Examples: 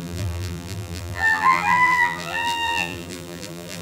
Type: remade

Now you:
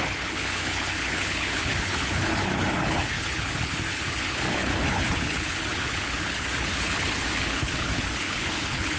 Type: remade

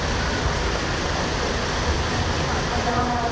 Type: recorded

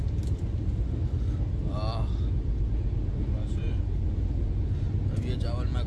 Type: recorded